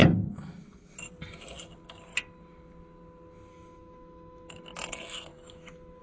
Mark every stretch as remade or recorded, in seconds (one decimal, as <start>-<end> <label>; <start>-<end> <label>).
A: 0.0-3.5 recorded; 3.5-4.5 remade; 4.5-5.3 recorded; 5.3-6.0 remade